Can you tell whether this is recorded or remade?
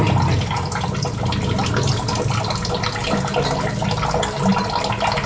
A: recorded